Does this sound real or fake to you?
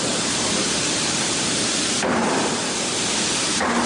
fake